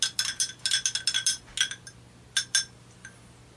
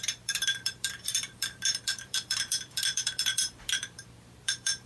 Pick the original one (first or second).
first